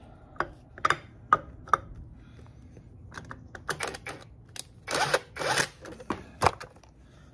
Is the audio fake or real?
real